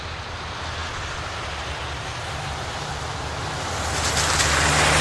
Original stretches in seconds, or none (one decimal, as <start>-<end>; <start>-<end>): 0.0-5.0